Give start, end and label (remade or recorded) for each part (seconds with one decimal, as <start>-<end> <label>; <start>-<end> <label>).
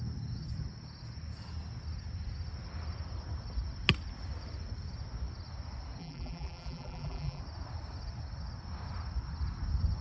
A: 0.0-6.0 recorded; 6.0-7.4 remade; 7.4-10.0 recorded